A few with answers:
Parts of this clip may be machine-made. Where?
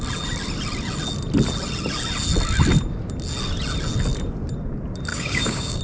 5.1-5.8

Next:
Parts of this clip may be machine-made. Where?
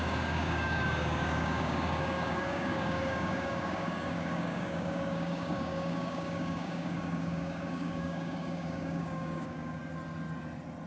0.0-9.8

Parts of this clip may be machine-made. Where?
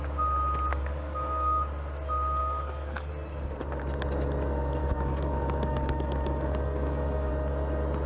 0.7-1.6; 2.4-3.1; 4.8-7.3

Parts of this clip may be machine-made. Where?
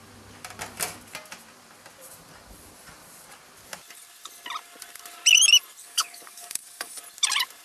5.8-7.0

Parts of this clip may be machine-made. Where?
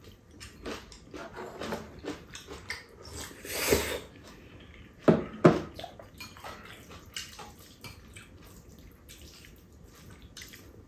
none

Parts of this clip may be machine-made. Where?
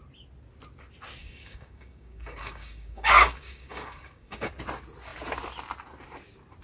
1.2-4.5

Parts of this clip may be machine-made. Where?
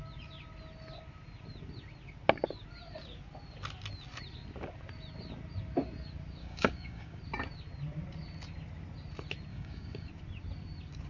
6.4-7.2; 9.5-10.1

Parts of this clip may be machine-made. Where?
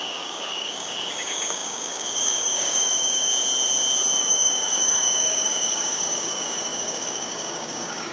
0.0-3.3; 4.2-8.1